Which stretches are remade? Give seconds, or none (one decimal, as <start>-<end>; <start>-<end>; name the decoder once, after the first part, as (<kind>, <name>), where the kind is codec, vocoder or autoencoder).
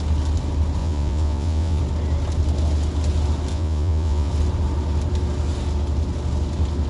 0.8-1.8 (vocoder, Vocos); 3.5-4.3